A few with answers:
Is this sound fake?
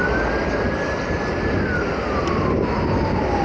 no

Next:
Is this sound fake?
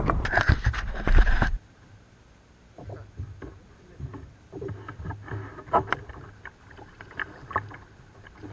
no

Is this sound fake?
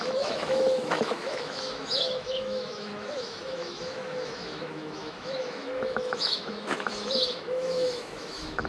yes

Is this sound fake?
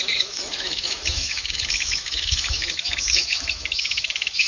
yes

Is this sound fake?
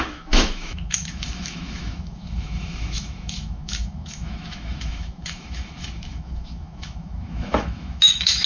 yes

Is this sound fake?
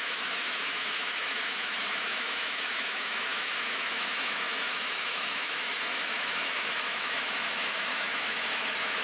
yes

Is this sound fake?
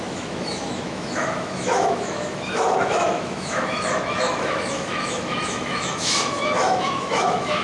yes